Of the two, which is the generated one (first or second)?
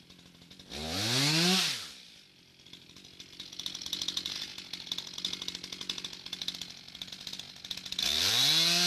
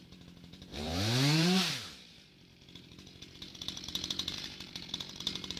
second